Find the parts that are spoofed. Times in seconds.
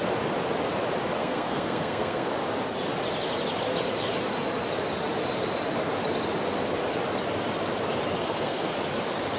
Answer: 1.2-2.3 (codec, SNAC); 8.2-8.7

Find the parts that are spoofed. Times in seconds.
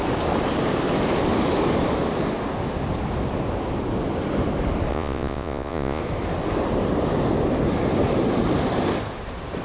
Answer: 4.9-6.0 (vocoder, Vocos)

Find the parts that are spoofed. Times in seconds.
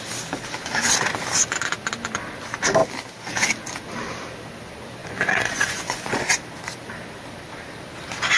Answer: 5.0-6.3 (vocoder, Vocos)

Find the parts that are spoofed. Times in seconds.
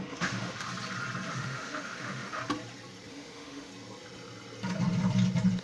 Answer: 0.0-0.7 (autoencoder, DAC-VAE); 1.3-2.4; 3.1-3.7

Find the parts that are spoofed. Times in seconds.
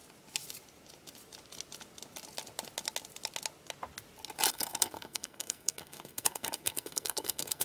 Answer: 4.5-7.6 (codec, SNAC)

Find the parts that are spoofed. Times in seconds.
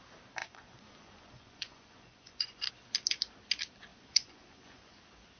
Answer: 0.4-2.7 (vocoder, Vocos); 3.9-5.0